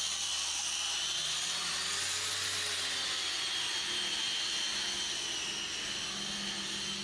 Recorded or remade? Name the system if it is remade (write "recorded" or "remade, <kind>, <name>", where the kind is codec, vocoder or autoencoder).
recorded